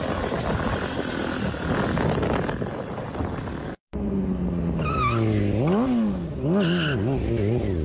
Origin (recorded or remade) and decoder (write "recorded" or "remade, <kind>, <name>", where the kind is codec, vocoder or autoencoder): recorded